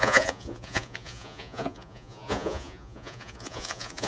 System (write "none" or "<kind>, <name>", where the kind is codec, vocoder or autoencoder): vocoder, Vocos